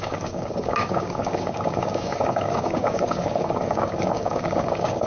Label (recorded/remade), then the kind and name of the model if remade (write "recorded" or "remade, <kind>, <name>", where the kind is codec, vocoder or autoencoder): remade, codec, DAC